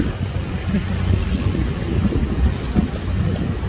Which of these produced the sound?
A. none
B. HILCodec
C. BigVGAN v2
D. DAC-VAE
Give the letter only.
A